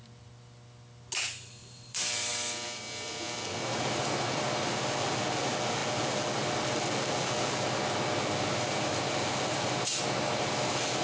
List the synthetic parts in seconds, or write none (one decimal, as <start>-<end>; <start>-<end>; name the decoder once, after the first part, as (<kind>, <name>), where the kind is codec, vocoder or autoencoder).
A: 1.6-2.3 (vocoder, BigVGAN v2)